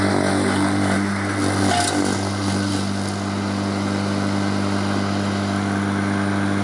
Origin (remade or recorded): recorded